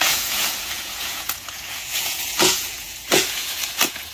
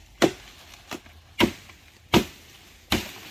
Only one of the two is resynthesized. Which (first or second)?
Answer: first